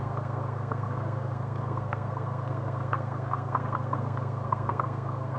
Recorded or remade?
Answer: remade